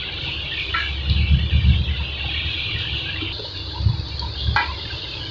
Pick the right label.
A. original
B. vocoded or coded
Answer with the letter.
A